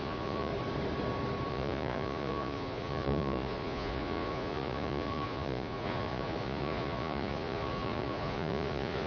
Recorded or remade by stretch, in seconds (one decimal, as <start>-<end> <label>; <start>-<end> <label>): 0.0-0.5 remade; 0.5-1.5 recorded; 1.5-9.1 remade

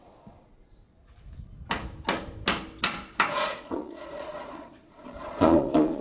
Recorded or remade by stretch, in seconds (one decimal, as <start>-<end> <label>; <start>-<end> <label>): 0.0-0.8 remade; 0.8-3.3 recorded; 3.3-6.0 remade

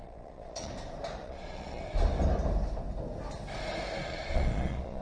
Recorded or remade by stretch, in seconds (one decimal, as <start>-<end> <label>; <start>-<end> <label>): 0.0-0.7 remade; 0.7-1.2 recorded; 1.2-1.8 remade; 1.8-4.0 recorded; 4.0-5.0 remade

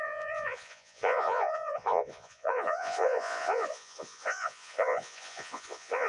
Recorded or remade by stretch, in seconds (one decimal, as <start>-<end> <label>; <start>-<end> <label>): 0.0-6.1 remade

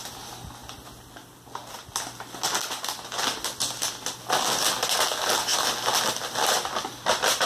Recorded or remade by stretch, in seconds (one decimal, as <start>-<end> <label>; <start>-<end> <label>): 0.0-7.5 recorded

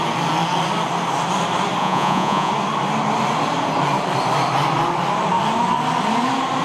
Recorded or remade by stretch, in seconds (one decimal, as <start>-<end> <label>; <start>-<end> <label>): 0.0-1.8 recorded; 1.8-2.5 remade; 2.5-6.6 recorded

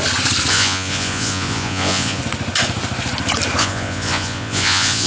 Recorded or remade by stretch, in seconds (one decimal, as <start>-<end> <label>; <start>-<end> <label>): 0.0-0.5 recorded; 0.5-2.2 remade; 2.2-3.6 recorded; 3.6-5.1 remade